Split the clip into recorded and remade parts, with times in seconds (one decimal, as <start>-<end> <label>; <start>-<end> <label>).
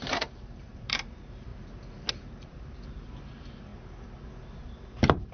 0.0-1.5 remade; 1.5-2.1 recorded; 2.1-3.7 remade; 3.7-5.3 recorded